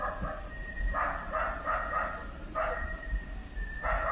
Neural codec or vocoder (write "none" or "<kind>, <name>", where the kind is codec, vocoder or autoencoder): none